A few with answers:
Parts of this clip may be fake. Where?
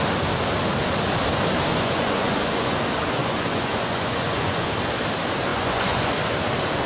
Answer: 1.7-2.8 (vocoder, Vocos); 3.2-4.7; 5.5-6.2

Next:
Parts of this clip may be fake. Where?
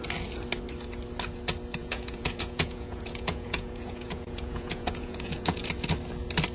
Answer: 1.8-5.7 (vocoder, Vocos)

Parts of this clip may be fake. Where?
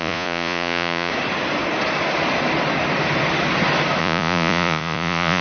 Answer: 0.0-1.1 (vocoder, Vocos); 4.0-5.4